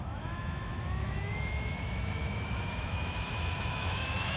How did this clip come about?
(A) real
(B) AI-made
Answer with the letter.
B